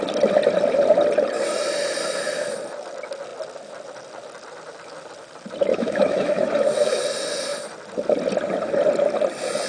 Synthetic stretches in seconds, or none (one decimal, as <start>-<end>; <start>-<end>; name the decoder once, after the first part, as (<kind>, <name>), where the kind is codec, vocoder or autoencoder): 5.7-7.0 (autoencoder, DAC-VAE)